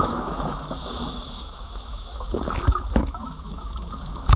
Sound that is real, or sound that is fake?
fake